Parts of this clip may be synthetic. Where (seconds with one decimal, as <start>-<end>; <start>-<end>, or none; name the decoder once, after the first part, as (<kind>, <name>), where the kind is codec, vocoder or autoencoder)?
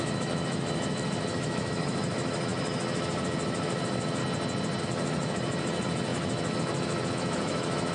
0.0-4.2 (autoencoder, DAC-VAE); 4.8-7.9